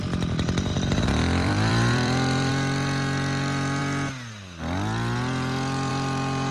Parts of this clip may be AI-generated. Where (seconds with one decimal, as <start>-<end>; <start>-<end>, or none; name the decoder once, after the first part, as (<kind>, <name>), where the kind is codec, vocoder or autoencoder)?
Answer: 0.7-2.5 (vocoder, BigVGAN v2)